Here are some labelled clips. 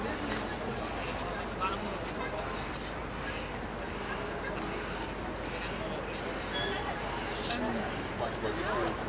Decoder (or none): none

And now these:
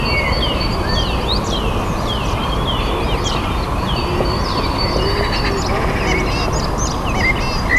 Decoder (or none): none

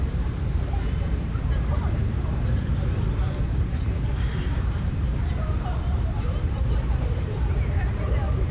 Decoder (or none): vocoder, BigVGAN v2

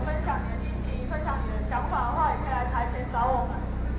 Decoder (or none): none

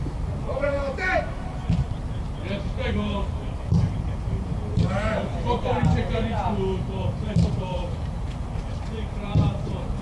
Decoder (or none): vocoder, BigVGAN v2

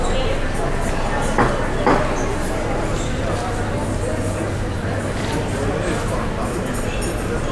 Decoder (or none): none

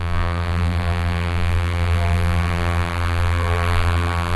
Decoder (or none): vocoder, BigVGAN v2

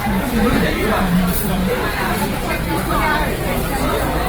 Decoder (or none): vocoder, BigVGAN v2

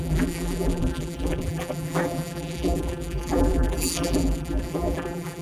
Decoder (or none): vocoder, BigVGAN v2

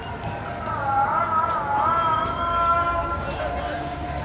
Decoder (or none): none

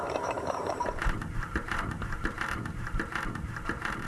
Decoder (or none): vocoder, BigVGAN v2